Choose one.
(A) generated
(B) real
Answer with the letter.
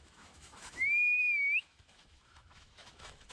A